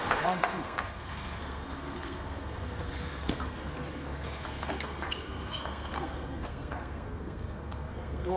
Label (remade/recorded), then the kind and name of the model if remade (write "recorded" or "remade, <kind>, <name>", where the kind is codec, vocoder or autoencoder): remade, codec, SNAC